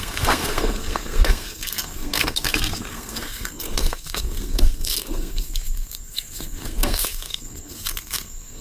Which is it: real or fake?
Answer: fake